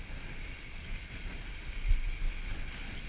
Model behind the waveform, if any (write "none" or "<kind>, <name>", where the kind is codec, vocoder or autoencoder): none